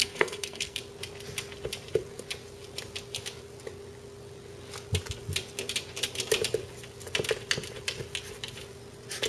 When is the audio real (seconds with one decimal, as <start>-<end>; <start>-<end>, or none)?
0.8-9.3